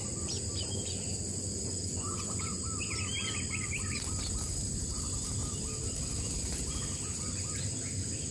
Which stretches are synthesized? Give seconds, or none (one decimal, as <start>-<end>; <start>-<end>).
1.3-2.6